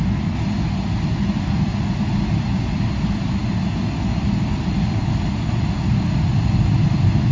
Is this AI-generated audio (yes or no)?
no